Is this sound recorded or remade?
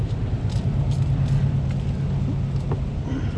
recorded